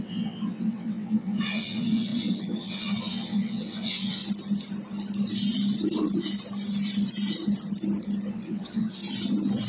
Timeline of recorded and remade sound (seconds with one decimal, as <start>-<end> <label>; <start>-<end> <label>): 0.0-4.2 remade; 4.2-8.3 recorded; 8.3-9.0 remade; 9.0-9.7 recorded